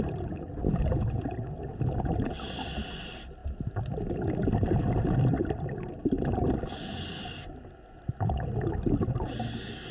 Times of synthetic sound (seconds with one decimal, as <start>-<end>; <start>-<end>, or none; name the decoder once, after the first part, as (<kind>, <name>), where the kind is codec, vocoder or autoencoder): 3.4-6.1 (vocoder, BigVGAN v2)